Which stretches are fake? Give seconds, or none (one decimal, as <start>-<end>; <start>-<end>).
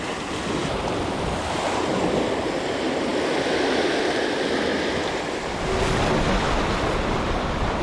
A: none